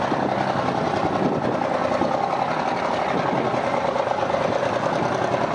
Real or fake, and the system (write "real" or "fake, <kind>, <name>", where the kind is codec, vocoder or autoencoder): real